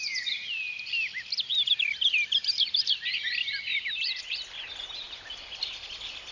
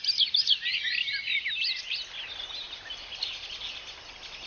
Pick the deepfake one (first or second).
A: first